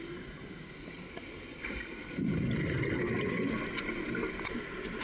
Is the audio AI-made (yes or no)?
no